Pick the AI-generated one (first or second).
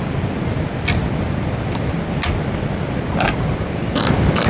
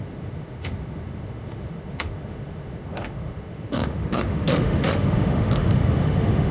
second